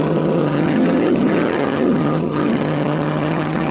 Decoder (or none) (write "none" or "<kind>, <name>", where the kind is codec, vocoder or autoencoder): vocoder, HiFi-GAN